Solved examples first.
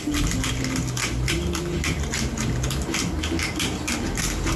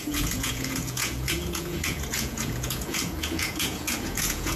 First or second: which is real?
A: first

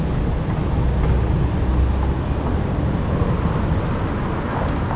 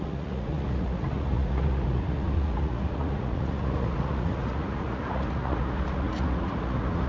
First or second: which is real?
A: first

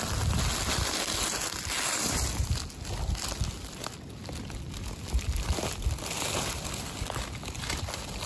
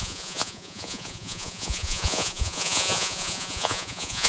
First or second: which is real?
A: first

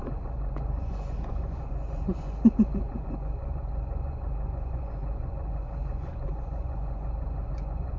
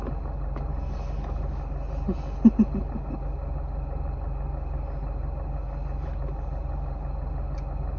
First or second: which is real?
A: second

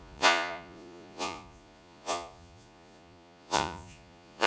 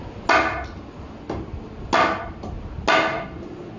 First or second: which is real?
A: second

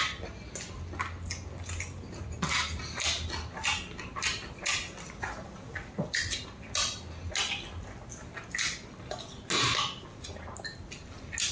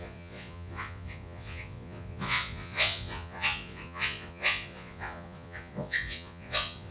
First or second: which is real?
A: first